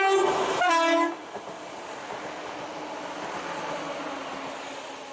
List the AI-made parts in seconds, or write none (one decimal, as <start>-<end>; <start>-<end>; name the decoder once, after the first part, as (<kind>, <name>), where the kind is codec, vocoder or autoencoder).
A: none